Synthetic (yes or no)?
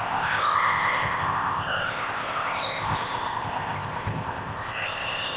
yes